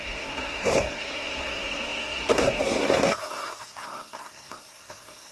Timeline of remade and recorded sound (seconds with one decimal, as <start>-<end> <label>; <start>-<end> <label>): 0.0-5.3 remade